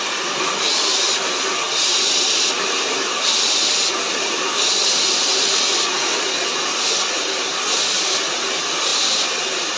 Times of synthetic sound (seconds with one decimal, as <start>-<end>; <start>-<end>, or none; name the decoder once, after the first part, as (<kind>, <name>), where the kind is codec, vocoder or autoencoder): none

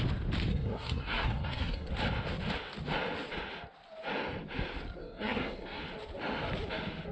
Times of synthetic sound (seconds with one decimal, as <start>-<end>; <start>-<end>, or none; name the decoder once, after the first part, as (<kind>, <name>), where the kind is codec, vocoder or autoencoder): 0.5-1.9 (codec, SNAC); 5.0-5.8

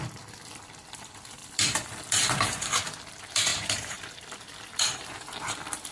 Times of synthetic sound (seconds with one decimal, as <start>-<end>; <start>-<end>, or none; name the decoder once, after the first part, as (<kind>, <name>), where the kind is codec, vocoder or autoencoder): 0.0-5.9 (vocoder, BigVGAN v2)

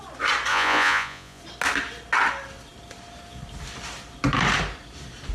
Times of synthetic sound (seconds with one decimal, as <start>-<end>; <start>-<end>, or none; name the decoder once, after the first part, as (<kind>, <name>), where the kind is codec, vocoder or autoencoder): 0.5-1.4 (vocoder, Vocos)

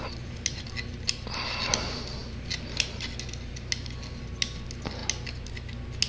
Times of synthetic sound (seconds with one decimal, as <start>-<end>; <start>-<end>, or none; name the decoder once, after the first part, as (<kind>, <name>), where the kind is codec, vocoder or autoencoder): none

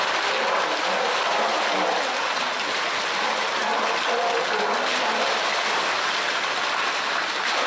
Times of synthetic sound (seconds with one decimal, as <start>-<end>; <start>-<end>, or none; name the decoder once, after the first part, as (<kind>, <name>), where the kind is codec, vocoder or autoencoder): none